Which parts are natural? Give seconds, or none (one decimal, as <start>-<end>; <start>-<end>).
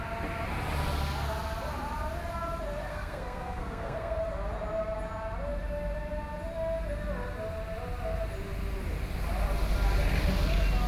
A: 0.0-2.9; 4.2-10.9